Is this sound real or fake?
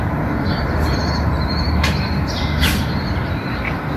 real